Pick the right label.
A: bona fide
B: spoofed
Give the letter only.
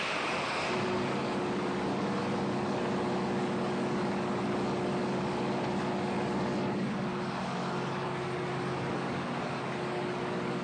B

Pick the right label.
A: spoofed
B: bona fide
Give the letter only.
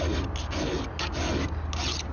B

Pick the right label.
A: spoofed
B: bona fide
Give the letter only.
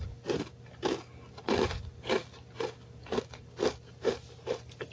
B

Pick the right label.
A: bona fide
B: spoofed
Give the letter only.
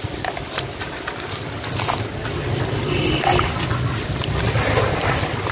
A